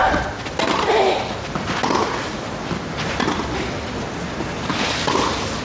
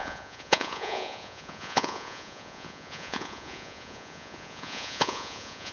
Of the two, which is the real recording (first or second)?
first